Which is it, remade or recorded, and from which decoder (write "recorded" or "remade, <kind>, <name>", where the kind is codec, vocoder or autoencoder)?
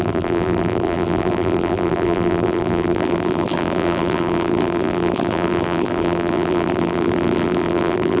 remade, vocoder, BigVGAN v2